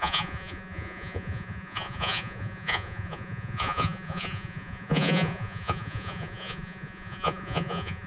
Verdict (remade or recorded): remade